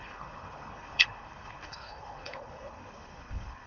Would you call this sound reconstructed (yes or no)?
yes